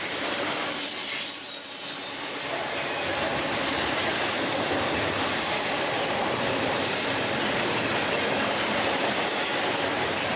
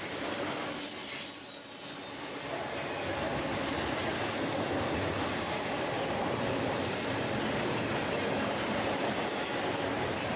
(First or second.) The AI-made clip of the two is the first